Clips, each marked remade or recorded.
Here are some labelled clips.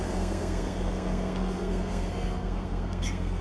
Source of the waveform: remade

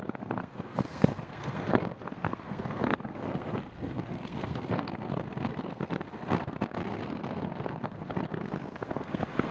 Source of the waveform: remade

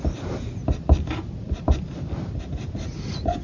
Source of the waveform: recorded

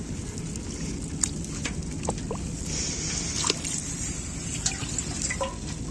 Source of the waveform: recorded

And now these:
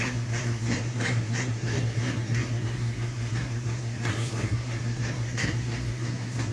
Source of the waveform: remade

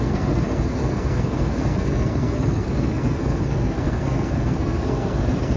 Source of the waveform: remade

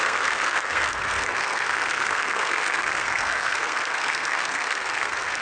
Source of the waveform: remade